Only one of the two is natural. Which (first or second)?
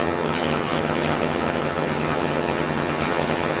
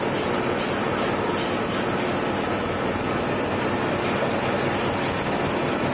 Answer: second